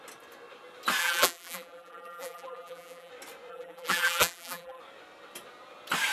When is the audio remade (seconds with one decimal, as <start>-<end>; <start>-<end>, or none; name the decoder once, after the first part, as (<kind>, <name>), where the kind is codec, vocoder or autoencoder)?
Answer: 1.0-3.1 (vocoder, BigVGAN v2); 3.5-4.8